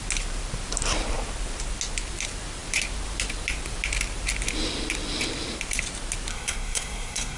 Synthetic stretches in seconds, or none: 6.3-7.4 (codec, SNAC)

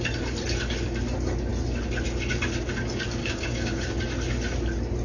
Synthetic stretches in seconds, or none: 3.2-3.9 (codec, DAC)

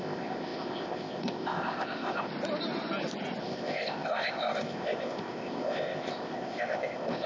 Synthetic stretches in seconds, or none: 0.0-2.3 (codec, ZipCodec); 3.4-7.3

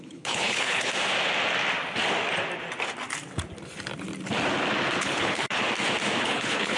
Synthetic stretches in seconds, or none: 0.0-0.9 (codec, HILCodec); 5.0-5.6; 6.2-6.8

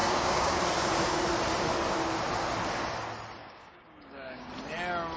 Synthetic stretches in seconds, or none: 0.0-0.6 (codec, DAC); 3.4-4.5